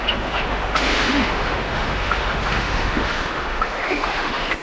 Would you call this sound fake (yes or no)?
yes